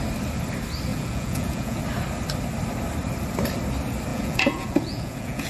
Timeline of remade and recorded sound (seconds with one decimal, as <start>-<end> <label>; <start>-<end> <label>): 0.0-0.9 recorded; 0.9-1.8 remade; 1.8-4.1 recorded; 4.1-5.5 remade